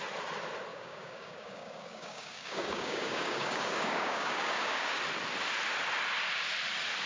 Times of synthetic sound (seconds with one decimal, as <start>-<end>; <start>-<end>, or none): 0.7-5.0